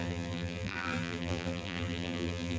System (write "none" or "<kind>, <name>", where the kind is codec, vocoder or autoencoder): vocoder, BigVGAN v2